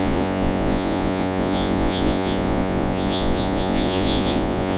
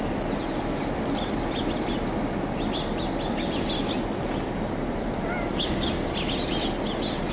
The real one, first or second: second